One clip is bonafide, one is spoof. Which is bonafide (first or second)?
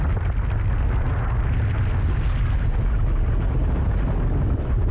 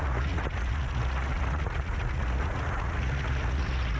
first